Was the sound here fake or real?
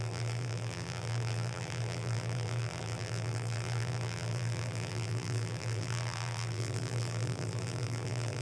fake